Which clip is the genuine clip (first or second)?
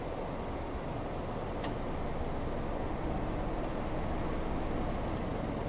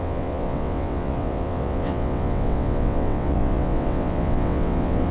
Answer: first